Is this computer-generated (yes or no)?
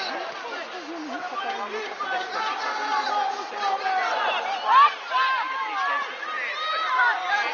no